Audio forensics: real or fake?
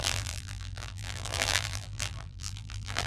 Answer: fake